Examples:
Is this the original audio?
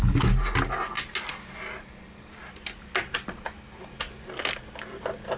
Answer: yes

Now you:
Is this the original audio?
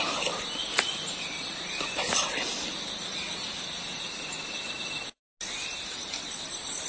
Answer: yes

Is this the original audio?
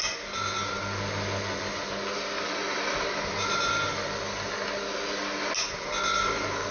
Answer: yes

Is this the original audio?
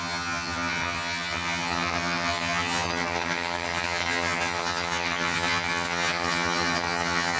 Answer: no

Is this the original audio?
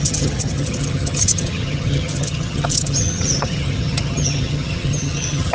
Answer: no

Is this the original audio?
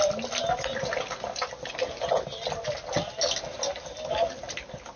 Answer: yes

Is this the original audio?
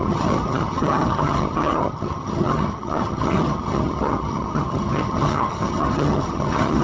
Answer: no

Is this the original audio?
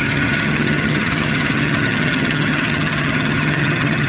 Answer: no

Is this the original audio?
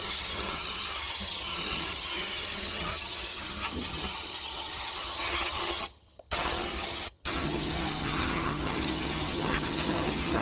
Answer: no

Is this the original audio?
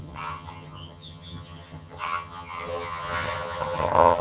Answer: no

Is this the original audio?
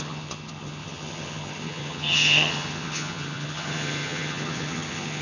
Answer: no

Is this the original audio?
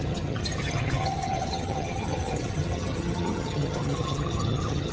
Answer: no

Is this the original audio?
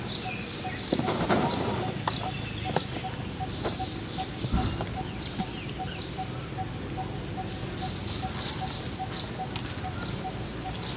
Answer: yes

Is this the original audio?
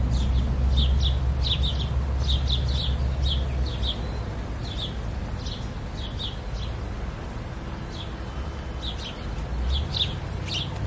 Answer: yes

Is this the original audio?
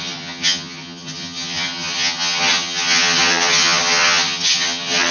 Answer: no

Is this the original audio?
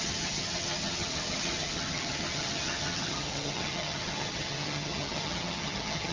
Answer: no